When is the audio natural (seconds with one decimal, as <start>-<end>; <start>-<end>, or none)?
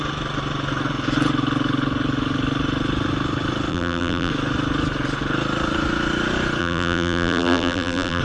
0.0-3.7; 4.3-6.6